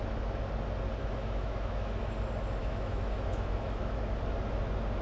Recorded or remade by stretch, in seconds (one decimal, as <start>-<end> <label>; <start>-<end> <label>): 0.0-1.0 recorded; 1.0-2.1 remade; 2.1-2.6 recorded; 2.6-4.0 remade; 4.0-5.0 recorded